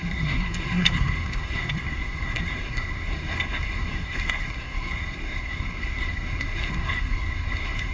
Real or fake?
fake